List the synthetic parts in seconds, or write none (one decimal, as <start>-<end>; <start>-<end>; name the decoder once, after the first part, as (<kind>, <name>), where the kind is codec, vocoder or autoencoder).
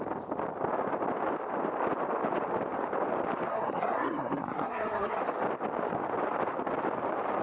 3.5-5.2 (codec, SNAC)